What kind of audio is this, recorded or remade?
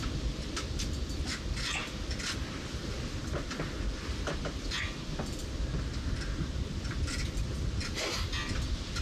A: recorded